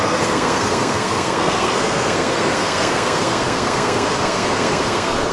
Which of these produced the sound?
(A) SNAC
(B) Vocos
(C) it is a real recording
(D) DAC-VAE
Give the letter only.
A